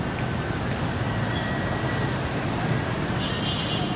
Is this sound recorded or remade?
recorded